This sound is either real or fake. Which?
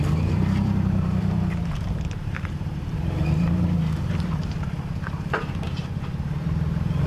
fake